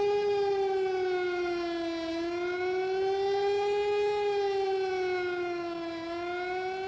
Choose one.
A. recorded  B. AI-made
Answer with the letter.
A